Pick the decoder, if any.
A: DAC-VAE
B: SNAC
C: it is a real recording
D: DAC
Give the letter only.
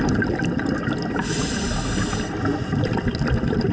C